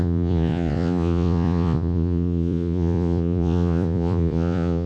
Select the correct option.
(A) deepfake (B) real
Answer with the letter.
A